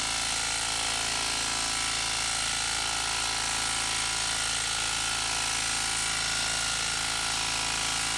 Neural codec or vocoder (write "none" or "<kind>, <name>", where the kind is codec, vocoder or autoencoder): none